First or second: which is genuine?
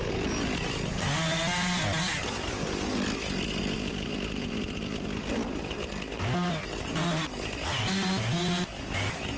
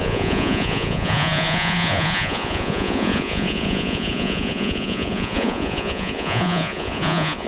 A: first